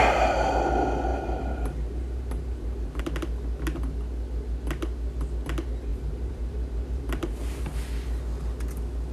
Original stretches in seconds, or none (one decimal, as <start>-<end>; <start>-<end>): 0.0-1.1; 3.0-5.9; 7.6-9.1